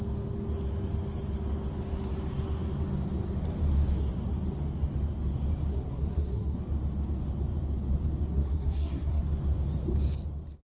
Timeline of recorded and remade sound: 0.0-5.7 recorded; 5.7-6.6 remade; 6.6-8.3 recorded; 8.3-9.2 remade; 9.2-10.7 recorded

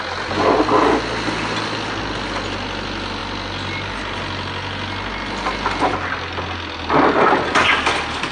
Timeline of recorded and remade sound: 0.0-8.3 recorded

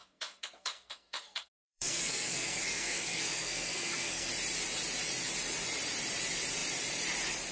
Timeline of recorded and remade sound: 0.0-4.3 remade; 4.3-7.5 recorded

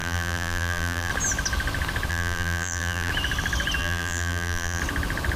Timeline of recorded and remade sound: 0.0-1.1 remade; 1.1-2.1 recorded; 2.1-3.1 remade; 3.1-3.8 recorded; 3.8-4.8 remade; 4.8-5.4 recorded

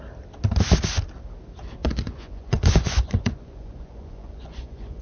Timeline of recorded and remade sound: 0.0-1.8 recorded; 1.8-5.0 remade

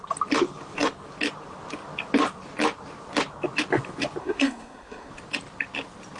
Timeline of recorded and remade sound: 0.0-4.2 recorded; 4.2-5.1 remade; 5.1-6.2 recorded

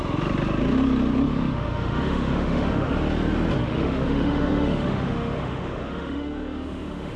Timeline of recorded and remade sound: 0.0-1.3 recorded; 1.3-2.9 remade; 2.9-3.6 recorded; 3.6-7.2 remade